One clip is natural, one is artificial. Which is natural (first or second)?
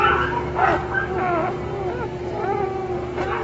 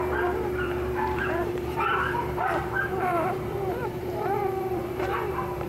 first